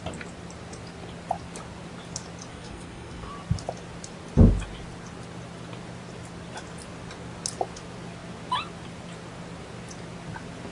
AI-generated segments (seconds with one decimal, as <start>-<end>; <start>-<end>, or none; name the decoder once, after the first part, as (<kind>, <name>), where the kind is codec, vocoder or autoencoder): 2.5-3.3 (codec, SNAC)